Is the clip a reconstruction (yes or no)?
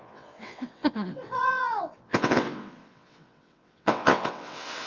yes